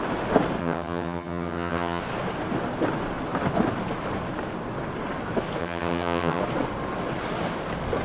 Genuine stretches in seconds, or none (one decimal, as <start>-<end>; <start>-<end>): 0.0-0.6; 2.0-5.6; 6.4-8.0